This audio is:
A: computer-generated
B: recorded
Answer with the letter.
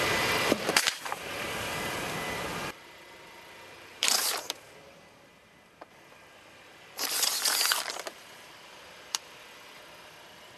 A